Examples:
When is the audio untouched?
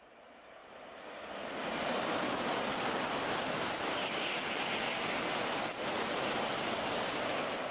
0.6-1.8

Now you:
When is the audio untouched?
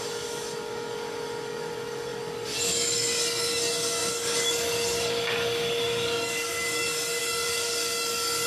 none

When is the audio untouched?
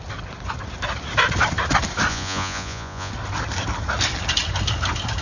0.0-2.1; 3.1-5.2